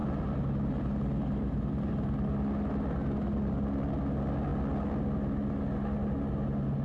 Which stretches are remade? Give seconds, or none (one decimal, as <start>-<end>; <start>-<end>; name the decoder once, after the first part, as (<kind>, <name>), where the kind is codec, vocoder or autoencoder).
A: none